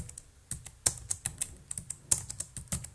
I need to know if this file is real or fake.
real